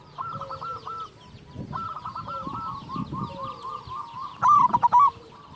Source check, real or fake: real